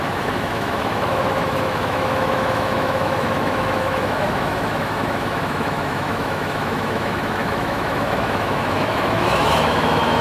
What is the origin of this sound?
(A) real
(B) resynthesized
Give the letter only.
B